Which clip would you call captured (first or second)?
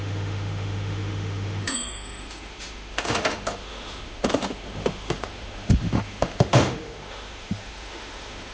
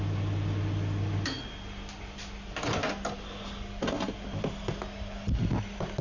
second